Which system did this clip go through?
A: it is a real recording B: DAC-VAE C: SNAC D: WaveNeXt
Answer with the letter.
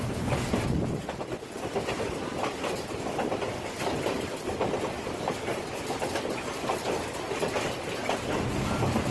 A